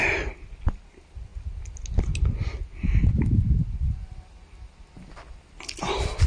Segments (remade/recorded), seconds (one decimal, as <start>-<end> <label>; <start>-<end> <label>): 0.0-6.3 recorded